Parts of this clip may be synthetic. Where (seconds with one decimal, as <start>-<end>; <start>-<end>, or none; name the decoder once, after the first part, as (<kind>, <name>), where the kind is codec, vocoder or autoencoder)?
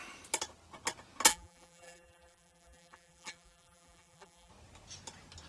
1.3-4.5 (vocoder, BigVGAN v2)